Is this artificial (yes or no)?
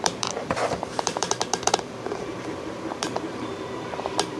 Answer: yes